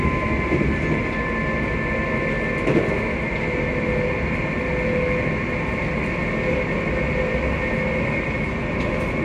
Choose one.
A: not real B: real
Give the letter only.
B